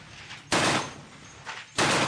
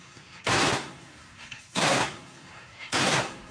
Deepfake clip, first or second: second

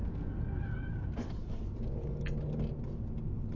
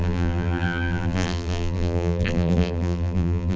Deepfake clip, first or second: second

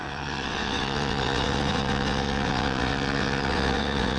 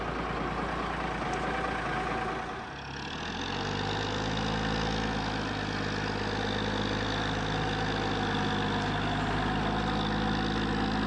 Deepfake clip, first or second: first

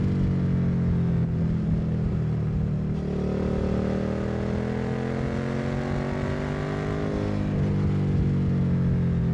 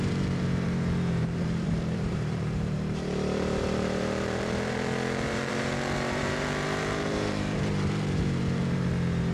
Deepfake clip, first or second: second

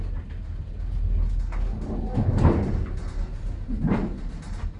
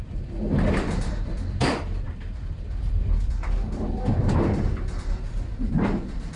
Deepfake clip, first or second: second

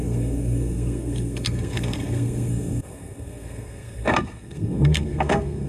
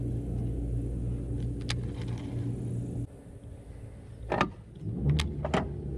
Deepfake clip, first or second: first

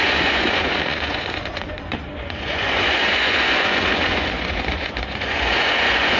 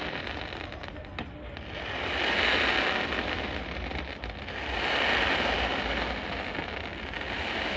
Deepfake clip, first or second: first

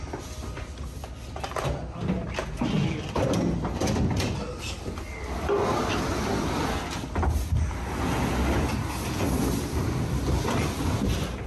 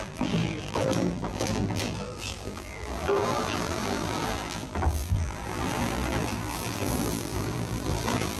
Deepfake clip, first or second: second